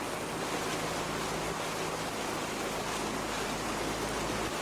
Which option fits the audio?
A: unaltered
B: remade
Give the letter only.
A